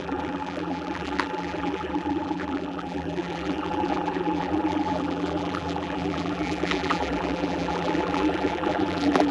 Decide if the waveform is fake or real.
fake